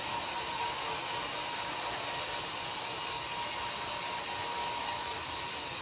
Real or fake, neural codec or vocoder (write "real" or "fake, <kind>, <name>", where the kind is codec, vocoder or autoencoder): real